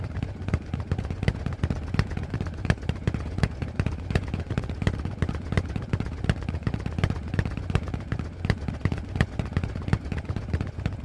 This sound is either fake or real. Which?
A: fake